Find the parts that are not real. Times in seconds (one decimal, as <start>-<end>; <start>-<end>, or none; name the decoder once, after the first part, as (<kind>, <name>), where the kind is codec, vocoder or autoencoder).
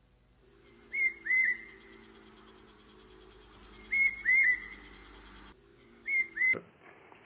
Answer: 5.7-6.3 (codec, DAC)